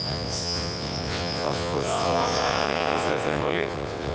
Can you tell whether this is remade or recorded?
remade